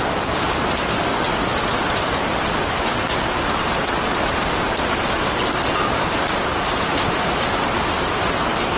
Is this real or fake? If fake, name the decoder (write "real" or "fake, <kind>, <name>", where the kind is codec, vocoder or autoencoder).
real